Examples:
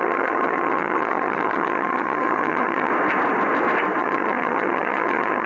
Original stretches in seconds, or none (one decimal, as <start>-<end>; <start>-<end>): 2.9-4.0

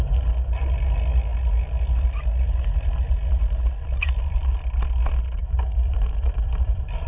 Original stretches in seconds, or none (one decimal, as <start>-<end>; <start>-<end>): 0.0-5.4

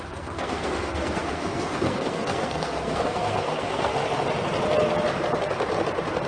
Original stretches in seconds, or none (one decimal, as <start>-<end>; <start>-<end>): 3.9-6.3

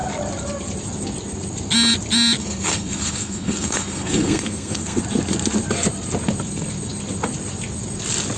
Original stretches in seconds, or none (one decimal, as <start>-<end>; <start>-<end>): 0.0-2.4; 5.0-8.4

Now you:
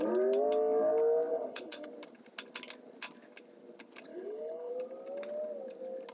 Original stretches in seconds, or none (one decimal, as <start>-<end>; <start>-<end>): 0.0-1.3; 1.9-4.1; 4.7-6.1

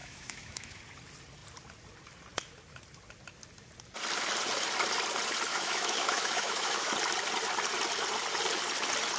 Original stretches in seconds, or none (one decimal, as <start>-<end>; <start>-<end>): 0.8-5.5; 6.9-9.2

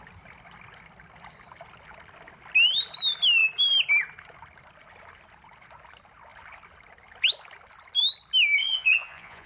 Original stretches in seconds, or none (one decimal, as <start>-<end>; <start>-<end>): 0.0-8.6

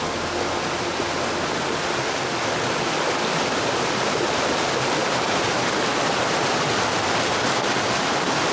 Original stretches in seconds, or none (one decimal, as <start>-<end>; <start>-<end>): 0.0-5.0; 5.7-8.5